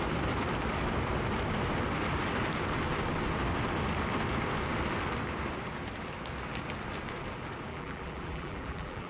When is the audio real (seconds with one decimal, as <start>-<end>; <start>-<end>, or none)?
0.0-7.7